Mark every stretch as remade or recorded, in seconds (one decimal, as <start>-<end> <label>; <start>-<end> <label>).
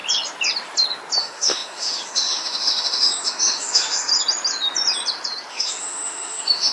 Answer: 0.0-1.2 recorded; 1.2-4.1 remade; 4.1-5.5 recorded; 5.5-6.7 remade